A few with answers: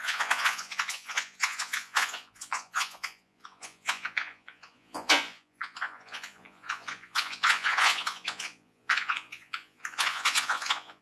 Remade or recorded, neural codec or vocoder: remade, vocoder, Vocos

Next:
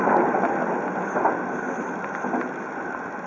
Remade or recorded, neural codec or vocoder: recorded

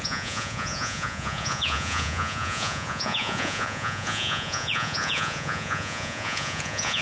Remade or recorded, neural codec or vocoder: remade, vocoder, Vocos